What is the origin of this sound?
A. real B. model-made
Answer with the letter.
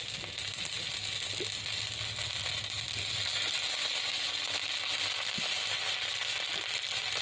A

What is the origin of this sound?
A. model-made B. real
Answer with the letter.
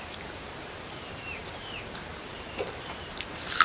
A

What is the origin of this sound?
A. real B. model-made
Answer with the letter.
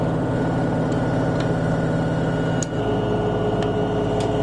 A